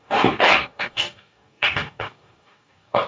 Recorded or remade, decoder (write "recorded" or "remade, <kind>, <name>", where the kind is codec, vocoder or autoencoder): remade, codec, DAC